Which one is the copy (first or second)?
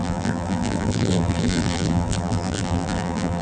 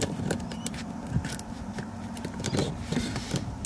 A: first